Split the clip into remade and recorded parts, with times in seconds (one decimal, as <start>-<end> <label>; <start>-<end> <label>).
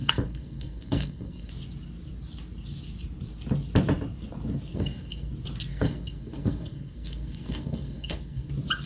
0.0-1.5 remade; 1.5-4.7 recorded; 4.7-5.3 remade; 5.3-5.7 recorded; 5.7-8.5 remade; 8.5-8.9 recorded